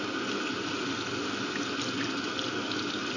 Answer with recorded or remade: recorded